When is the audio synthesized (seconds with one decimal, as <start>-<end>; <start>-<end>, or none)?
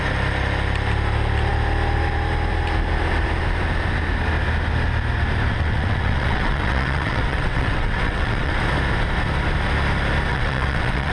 5.5-8.6; 10.3-11.1